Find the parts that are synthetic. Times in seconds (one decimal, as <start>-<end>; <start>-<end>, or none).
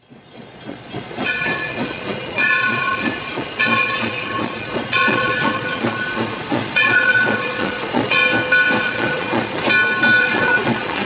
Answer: 0.0-8.2; 8.8-9.6; 10.2-11.0